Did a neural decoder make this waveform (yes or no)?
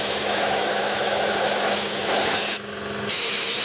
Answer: yes